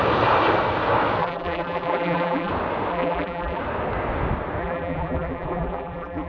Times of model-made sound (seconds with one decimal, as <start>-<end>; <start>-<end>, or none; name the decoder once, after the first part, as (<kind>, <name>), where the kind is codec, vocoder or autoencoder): 1.2-2.5 (vocoder, BigVGAN v2); 2.9-3.6; 4.6-6.3